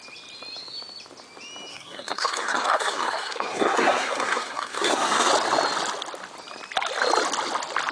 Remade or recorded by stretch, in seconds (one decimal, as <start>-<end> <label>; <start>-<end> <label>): 0.0-1.7 recorded; 1.7-5.3 remade; 5.3-7.9 recorded